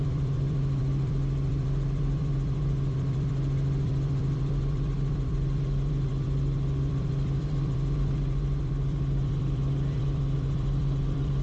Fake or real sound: fake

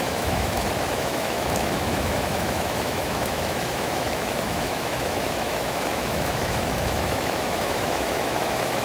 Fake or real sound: fake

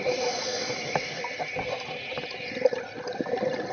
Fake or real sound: real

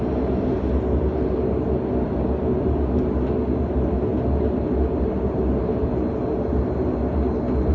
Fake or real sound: real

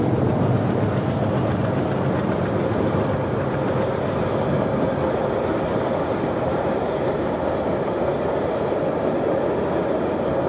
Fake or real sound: real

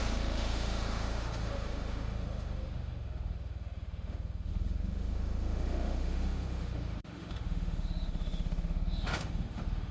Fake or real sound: fake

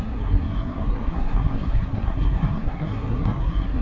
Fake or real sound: fake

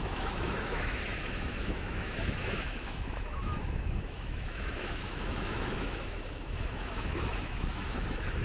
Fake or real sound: fake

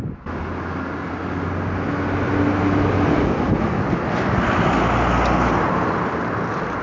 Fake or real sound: real